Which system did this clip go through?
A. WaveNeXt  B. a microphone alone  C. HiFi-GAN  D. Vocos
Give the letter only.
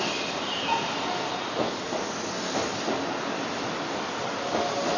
B